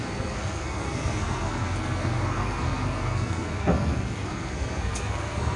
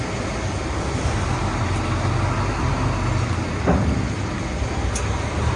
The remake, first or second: first